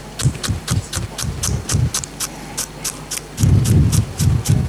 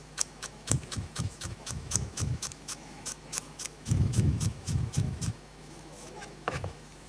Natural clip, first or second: first